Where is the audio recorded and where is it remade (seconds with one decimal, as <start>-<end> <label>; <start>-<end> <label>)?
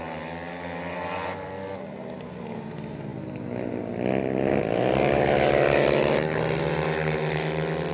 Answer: 0.0-7.9 recorded